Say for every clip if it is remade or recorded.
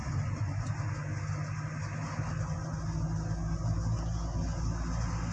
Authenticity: recorded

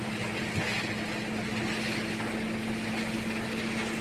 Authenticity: recorded